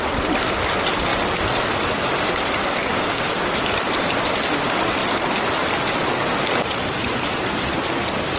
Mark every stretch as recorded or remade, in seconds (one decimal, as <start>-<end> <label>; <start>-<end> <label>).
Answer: 0.0-2.8 recorded; 2.8-3.5 remade; 3.5-8.4 recorded